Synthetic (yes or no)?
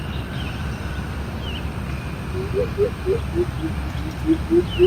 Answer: no